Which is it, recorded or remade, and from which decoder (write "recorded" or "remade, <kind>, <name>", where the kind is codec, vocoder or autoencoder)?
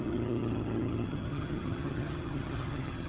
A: remade, vocoder, HiFi-GAN